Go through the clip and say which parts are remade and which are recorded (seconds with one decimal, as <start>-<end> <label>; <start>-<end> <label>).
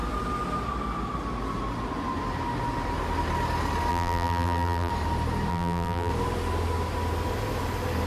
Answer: 0.0-3.9 recorded; 3.9-4.9 remade; 4.9-5.5 recorded; 5.5-6.1 remade; 6.1-8.1 recorded